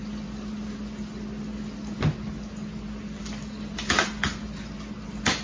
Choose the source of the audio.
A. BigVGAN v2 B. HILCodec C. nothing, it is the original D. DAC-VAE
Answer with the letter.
C